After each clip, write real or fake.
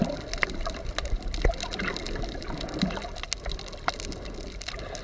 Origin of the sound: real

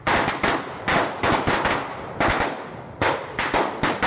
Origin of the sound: real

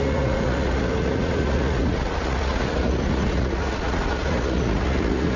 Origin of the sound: fake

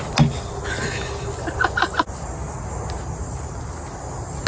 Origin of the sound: real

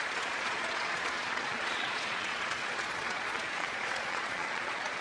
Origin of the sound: fake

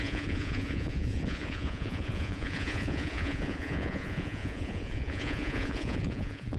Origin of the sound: fake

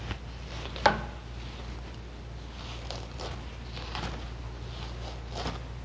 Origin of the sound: real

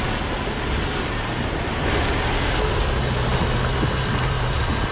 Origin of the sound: real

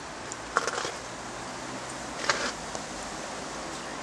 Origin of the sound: real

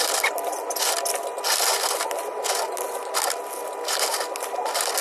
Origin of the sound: real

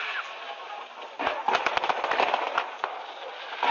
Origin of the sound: real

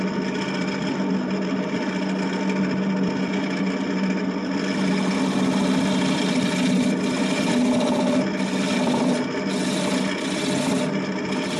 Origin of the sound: real